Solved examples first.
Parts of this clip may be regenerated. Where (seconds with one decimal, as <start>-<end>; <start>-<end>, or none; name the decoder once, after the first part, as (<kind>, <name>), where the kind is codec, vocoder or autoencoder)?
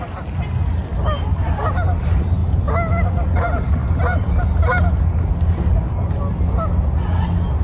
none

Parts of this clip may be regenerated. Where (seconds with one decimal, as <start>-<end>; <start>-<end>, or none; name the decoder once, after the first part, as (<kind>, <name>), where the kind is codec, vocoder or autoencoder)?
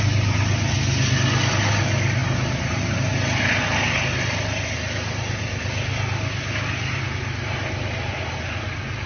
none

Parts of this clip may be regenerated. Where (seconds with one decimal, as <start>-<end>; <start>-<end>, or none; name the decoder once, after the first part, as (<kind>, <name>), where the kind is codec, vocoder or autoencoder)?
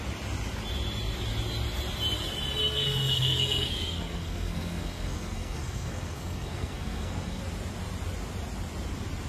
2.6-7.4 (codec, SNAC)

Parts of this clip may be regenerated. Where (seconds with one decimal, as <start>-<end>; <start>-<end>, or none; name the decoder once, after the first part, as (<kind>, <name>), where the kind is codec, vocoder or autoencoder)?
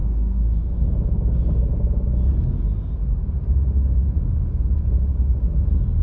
0.0-1.7 (codec, SNAC)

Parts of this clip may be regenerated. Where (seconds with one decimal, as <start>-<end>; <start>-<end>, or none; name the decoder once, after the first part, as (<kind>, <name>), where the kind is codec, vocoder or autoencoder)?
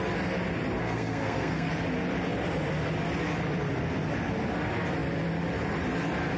0.8-1.7 (codec, SNAC)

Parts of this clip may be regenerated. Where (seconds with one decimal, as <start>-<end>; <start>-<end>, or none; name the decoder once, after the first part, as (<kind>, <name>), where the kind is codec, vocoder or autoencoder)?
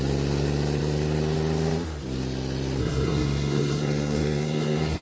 2.8-5.0 (codec, SNAC)